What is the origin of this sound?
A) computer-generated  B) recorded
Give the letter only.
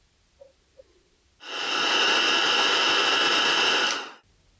B